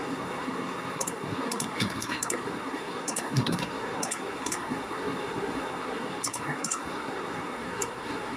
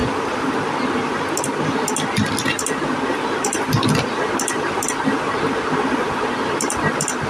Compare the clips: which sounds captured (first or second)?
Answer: second